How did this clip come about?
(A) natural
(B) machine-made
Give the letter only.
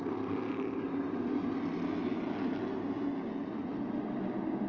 A